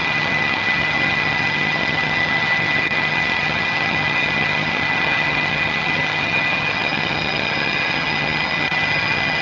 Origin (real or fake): fake